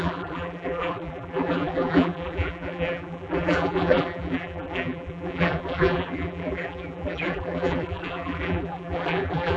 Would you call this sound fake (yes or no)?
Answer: yes